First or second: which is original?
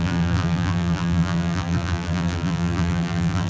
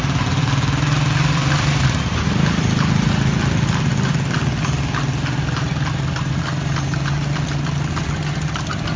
second